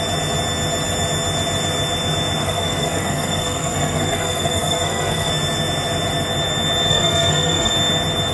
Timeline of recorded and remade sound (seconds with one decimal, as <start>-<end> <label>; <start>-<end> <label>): 0.0-2.4 recorded; 2.4-5.3 remade; 5.3-6.9 recorded; 6.9-7.7 remade; 7.7-8.3 recorded